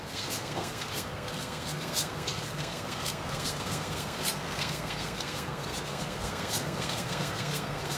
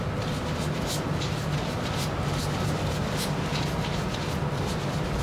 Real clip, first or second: second